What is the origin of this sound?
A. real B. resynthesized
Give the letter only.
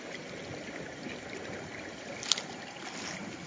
A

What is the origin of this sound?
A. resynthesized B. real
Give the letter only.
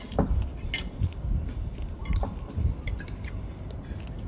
B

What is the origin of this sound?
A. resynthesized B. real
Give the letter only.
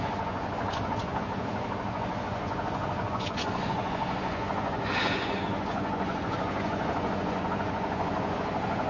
A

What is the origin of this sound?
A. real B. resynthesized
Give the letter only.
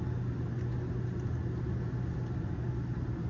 A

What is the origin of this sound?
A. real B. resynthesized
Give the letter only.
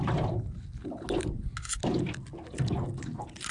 A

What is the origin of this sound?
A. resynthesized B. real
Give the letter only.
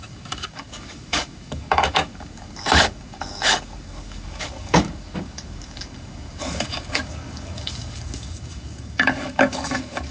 A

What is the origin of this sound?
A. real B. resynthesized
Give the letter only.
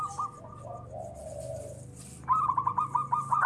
A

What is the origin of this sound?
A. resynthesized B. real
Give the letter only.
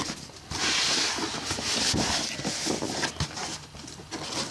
B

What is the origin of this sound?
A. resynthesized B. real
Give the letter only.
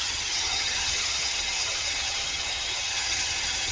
A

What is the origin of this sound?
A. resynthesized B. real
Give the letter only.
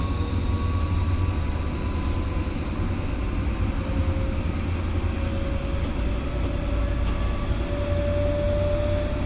B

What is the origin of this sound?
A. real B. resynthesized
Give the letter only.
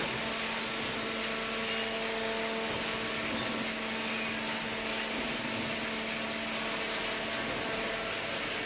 A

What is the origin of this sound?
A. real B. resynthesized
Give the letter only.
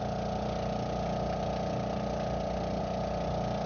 A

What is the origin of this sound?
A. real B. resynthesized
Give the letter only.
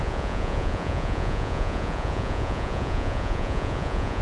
B